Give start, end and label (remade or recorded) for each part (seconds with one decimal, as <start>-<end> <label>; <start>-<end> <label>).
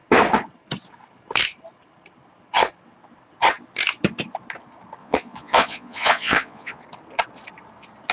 0.0-5.0 recorded; 5.0-6.8 remade; 6.8-8.1 recorded